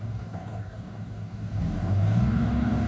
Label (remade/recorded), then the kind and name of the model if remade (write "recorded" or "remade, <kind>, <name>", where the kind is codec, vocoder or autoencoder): remade, codec, DAC